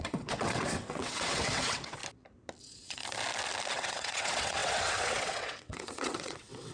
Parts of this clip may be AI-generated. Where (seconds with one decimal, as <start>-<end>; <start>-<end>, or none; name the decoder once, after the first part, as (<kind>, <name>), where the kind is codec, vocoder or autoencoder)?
0.0-2.0 (vocoder, WaveNeXt); 2.6-3.0; 3.7-6.7